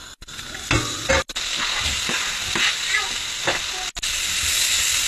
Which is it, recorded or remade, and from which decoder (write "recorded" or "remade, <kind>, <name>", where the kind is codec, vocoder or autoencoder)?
recorded